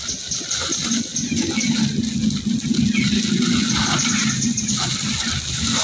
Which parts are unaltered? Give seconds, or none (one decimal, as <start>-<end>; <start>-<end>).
0.0-5.8